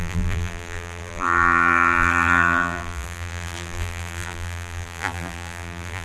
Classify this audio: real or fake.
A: fake